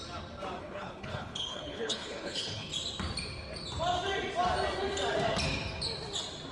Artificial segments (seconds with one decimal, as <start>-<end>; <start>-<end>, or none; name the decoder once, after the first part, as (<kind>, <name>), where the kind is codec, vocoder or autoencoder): 0.6-2.7 (codec, HILCodec)